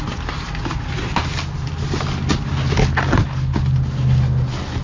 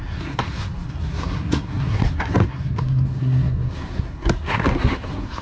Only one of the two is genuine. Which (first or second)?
first